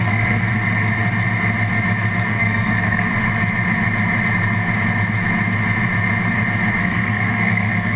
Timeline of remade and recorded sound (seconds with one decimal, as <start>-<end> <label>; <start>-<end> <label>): 0.0-0.5 remade; 0.5-2.3 recorded; 2.3-3.1 remade; 3.1-6.8 recorded; 6.8-8.0 remade